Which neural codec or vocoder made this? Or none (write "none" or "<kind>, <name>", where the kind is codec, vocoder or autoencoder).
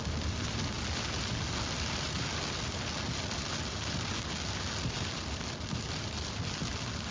none